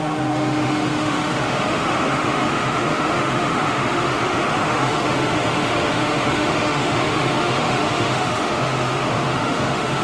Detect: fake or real fake